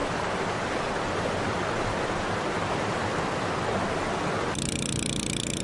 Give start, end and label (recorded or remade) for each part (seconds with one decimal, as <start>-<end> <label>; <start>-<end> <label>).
0.0-5.6 recorded